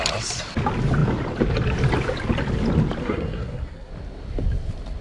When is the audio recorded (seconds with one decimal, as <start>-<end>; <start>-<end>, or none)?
0.0-3.0; 3.9-5.0